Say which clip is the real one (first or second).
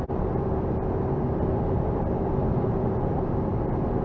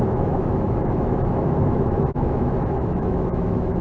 first